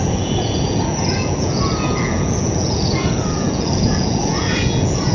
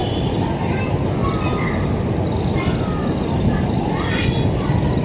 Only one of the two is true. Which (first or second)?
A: second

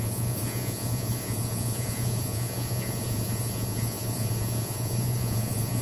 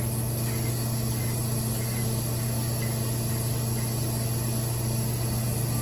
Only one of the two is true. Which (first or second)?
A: second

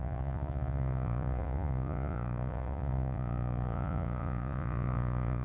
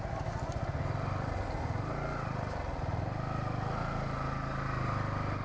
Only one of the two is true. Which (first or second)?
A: second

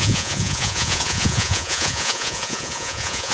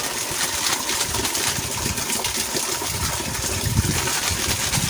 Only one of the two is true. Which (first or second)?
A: second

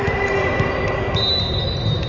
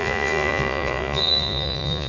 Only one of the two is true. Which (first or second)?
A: first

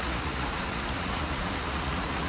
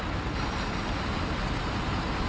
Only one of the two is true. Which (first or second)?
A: second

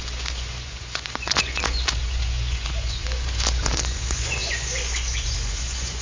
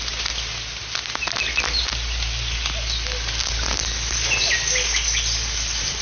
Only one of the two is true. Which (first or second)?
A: second